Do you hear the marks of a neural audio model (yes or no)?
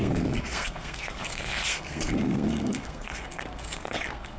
yes